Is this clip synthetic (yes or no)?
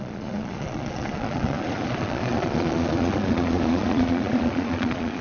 yes